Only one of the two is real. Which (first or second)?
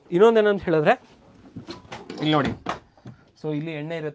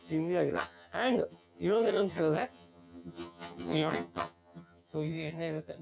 first